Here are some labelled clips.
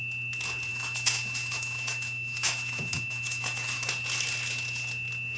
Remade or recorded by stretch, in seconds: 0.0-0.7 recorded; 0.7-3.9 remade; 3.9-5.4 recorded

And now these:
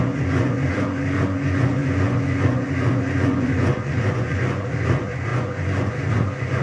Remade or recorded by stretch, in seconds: 0.0-6.6 remade